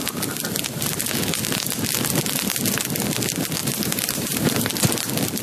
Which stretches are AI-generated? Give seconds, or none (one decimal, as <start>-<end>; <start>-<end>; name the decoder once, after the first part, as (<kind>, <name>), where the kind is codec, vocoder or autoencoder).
3.6-4.7 (vocoder, BigVGAN v2)